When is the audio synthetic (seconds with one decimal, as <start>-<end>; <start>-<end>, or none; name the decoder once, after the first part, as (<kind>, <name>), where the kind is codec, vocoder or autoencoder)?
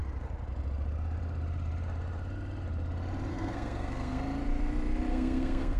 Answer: 3.3-4.2 (codec, SNAC); 5.1-5.8